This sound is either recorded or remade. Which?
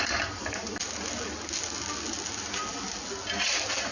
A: recorded